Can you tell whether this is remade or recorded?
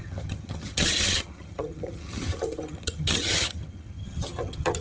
remade